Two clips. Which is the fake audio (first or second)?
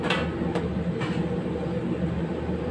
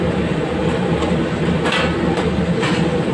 second